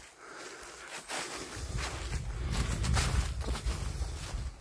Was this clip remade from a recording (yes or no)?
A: no